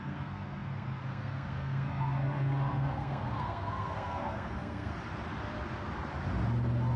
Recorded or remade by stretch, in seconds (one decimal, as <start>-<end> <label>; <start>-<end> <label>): 0.0-4.9 remade; 4.9-7.0 recorded